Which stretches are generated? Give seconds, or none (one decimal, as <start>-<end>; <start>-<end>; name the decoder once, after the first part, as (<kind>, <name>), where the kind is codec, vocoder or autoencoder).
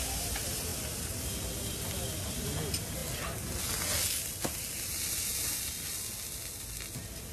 none